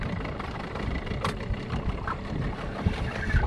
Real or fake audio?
fake